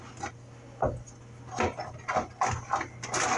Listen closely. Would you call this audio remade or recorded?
recorded